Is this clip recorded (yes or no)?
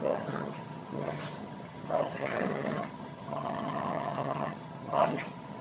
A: no